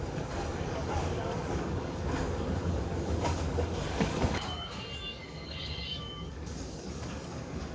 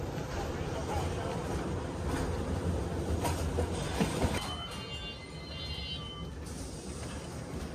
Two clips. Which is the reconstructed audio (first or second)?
first